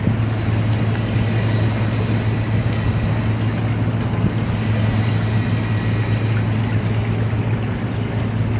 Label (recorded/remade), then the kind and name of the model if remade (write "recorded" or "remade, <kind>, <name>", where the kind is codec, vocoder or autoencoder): recorded